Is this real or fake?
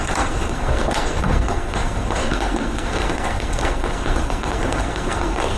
fake